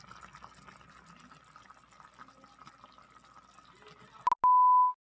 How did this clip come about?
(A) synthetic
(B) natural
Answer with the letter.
B